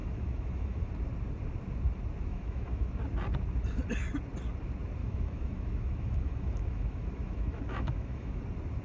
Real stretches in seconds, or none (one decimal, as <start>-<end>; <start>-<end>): 0.9-2.3; 2.9-5.0; 8.4-8.8